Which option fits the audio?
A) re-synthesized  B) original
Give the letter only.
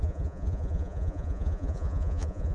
A